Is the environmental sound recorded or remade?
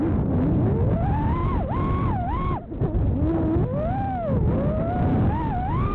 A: recorded